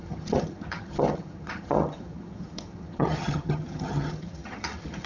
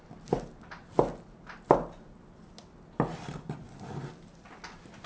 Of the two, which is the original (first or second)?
second